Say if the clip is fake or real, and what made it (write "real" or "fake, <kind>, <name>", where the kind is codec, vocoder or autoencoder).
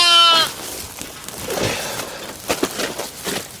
real